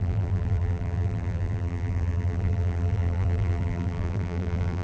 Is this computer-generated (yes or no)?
yes